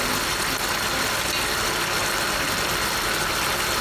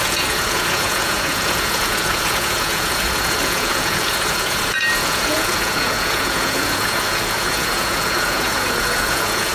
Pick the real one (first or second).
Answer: first